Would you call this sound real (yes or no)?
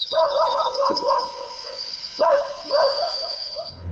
no